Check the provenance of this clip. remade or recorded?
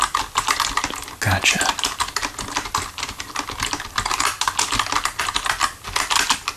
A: recorded